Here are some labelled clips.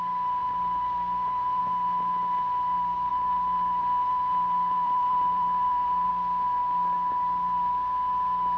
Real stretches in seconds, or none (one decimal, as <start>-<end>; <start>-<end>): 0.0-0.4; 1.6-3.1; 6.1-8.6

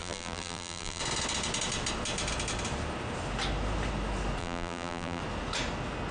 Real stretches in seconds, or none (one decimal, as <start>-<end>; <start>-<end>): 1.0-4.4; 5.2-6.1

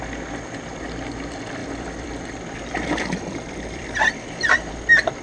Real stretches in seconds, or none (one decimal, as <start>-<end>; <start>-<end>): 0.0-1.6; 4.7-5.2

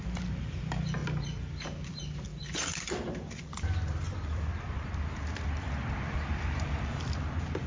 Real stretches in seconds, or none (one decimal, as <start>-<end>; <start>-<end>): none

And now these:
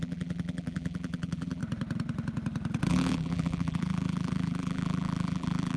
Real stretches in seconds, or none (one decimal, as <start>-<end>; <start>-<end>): 1.6-2.9

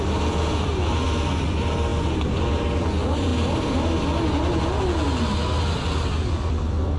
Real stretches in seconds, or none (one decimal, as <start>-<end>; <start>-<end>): 0.0-7.0